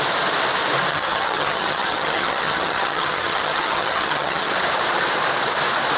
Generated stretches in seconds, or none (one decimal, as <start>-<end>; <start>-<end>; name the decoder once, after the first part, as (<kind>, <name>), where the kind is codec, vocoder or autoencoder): 0.9-4.5 (vocoder, HiFi-GAN)